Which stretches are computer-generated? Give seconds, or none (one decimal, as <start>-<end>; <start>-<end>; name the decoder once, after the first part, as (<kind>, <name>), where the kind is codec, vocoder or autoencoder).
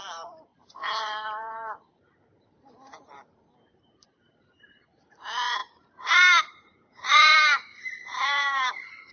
0.0-9.1 (vocoder, BigVGAN v2)